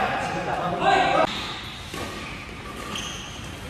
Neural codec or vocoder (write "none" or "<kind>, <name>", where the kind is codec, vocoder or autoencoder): none